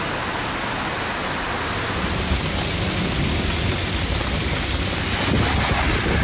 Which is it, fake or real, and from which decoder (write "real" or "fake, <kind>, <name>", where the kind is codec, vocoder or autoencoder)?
real